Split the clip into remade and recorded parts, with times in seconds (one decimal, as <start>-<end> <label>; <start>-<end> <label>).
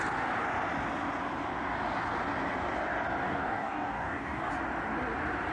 0.0-3.2 recorded; 3.2-4.5 remade; 4.5-5.5 recorded